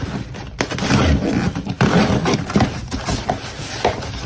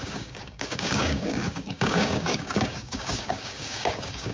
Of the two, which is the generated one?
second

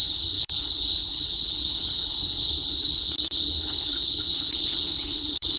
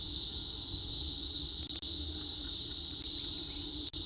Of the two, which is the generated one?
first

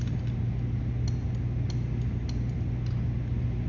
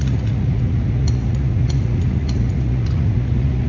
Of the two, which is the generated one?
second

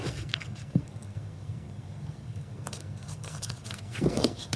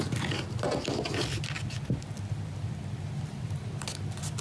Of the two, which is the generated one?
first